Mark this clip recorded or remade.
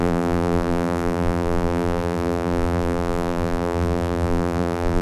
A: remade